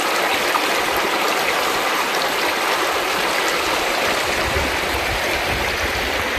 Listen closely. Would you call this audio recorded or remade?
recorded